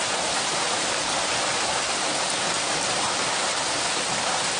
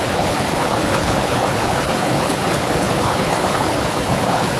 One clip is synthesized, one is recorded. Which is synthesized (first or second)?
second